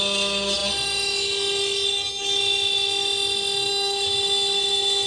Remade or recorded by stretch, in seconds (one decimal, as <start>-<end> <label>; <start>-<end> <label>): 0.0-5.1 recorded

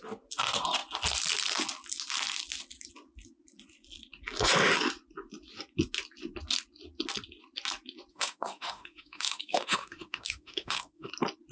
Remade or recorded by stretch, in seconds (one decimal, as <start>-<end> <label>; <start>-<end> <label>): 0.0-8.1 recorded; 8.1-11.1 remade; 11.1-11.5 recorded

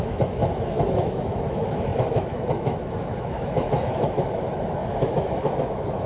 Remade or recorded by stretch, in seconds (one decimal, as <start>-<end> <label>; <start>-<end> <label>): 0.0-6.1 remade

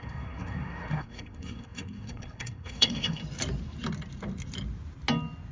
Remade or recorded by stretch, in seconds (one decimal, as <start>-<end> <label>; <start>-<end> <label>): 0.0-3.2 remade; 3.2-5.5 recorded

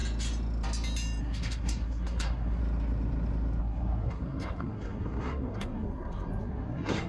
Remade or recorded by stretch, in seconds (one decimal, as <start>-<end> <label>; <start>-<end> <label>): 0.0-1.2 recorded; 1.2-2.6 remade; 2.6-3.6 recorded; 3.6-7.1 remade